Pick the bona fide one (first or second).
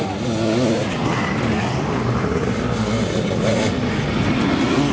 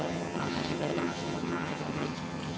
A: first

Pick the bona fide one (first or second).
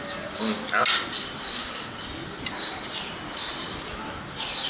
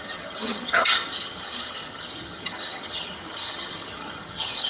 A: first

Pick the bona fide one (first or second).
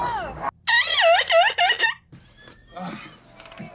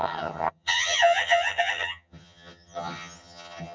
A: first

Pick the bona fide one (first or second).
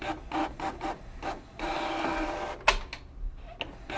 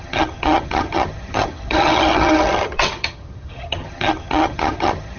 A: first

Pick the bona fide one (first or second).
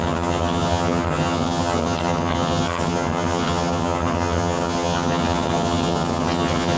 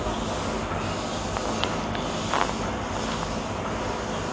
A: second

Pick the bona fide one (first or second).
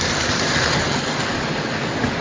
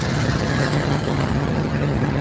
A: first